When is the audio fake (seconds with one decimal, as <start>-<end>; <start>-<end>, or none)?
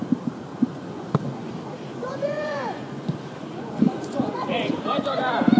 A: 0.5-1.5; 1.9-5.6